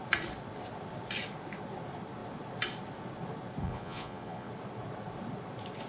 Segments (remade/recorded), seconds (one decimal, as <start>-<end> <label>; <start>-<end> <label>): 0.0-3.6 recorded; 3.6-4.5 remade; 4.5-5.9 recorded